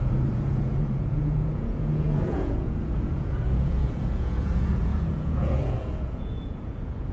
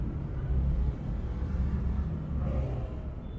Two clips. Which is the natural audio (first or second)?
second